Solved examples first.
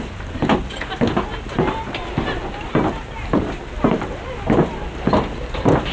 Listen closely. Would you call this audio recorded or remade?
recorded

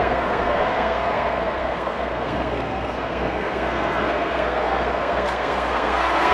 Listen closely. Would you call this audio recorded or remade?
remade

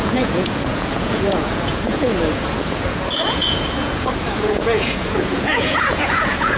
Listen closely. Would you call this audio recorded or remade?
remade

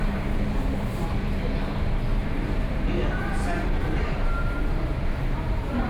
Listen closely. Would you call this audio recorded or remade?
remade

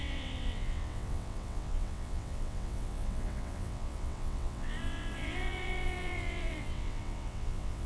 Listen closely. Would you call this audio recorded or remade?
remade